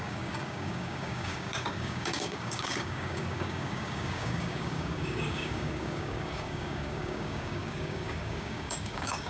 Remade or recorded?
remade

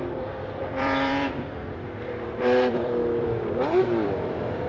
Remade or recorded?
remade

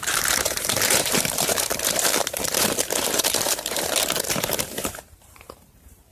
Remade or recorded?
remade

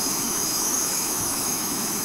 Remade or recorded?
remade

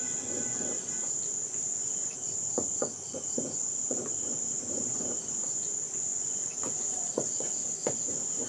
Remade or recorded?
remade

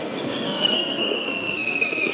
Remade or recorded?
remade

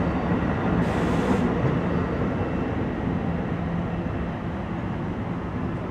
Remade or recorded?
recorded